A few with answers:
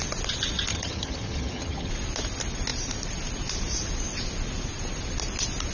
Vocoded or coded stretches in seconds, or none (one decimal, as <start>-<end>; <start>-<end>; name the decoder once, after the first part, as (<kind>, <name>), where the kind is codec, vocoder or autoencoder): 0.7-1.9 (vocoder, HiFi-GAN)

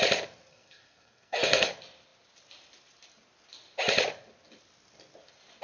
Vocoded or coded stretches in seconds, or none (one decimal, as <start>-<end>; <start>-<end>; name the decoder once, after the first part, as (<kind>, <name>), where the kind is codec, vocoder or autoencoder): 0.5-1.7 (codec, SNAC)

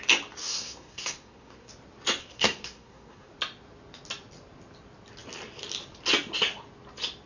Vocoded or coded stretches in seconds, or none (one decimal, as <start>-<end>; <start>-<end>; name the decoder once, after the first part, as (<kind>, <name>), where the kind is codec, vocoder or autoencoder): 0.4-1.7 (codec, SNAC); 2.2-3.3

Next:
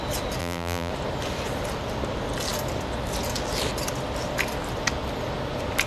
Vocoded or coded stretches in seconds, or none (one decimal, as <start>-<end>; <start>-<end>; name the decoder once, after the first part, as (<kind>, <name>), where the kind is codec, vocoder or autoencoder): 0.4-0.9 (vocoder, BigVGAN v2)